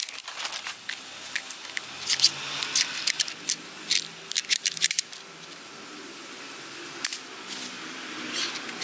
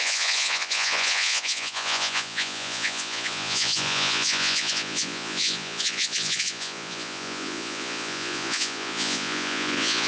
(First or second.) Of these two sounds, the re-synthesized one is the second